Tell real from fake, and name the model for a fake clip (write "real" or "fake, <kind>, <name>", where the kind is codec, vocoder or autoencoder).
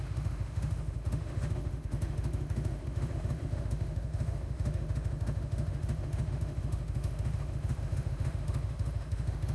fake, autoencoder, DAC-VAE